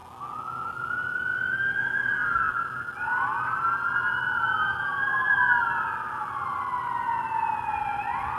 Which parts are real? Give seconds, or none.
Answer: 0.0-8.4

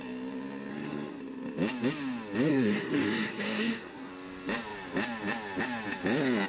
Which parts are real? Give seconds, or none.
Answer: 0.0-0.7; 1.2-2.5; 4.1-6.5

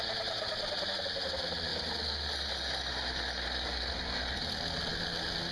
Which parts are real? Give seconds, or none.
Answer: 0.0-5.5

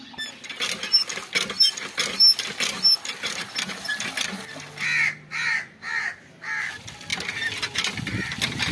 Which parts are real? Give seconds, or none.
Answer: 0.0-8.7